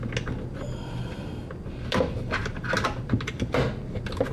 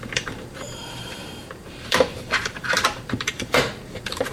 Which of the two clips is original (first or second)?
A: first